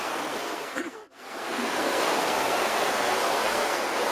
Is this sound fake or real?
fake